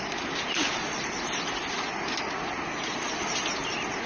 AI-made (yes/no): no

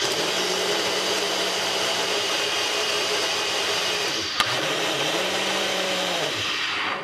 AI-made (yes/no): yes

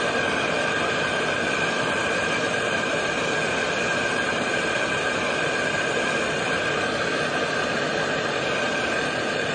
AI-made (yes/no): yes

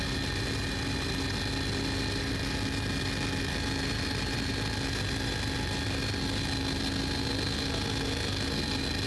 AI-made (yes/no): no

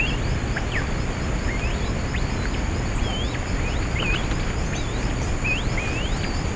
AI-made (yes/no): no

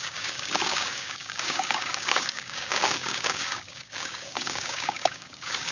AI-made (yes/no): yes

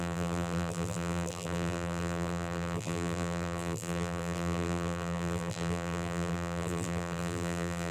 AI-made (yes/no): yes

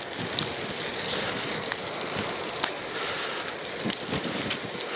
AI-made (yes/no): no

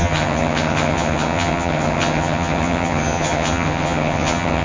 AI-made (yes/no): yes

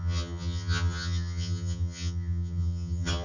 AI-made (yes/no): yes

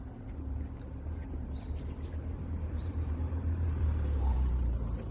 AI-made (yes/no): yes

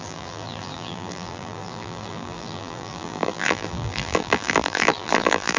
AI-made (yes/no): yes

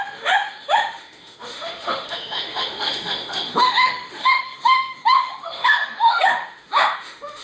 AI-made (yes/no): yes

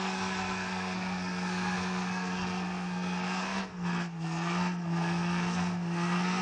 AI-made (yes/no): yes